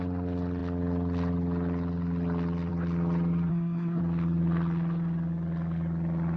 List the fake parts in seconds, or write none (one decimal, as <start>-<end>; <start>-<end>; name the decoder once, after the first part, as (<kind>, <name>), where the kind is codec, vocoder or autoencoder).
3.5-4.0 (codec, SNAC)